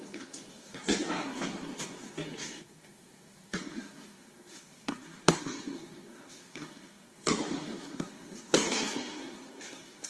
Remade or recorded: remade